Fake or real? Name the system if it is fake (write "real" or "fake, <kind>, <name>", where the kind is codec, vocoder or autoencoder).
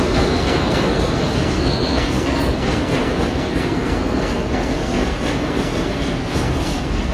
fake, codec, SNAC